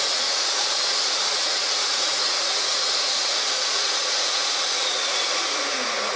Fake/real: fake